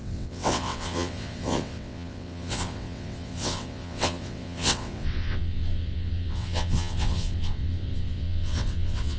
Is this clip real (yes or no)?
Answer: no